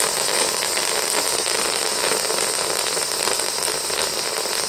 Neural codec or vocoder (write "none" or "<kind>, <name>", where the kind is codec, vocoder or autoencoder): none